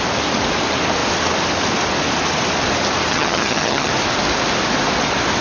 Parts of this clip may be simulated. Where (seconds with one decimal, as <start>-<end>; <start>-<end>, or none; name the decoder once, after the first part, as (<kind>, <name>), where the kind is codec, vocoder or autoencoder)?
3.1-3.9 (vocoder, HiFi-GAN)